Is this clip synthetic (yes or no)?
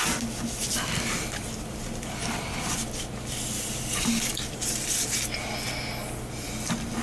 no